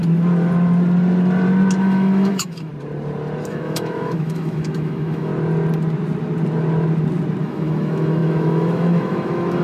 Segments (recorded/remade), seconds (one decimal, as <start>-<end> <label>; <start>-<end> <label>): 0.0-1.8 recorded; 1.8-2.7 remade; 2.7-3.5 recorded; 3.5-5.3 remade; 5.3-7.4 recorded; 7.4-9.6 remade